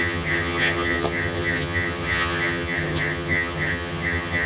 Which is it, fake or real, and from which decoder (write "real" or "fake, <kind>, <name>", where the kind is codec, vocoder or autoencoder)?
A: fake, vocoder, HiFi-GAN